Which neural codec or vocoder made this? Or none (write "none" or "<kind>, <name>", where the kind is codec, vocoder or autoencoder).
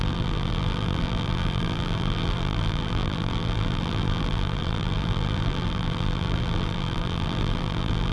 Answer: vocoder, BigVGAN v2